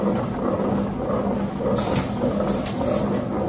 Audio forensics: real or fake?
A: real